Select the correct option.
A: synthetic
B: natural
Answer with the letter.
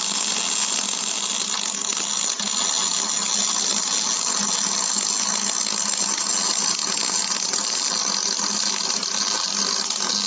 B